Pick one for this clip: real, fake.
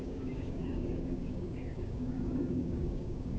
fake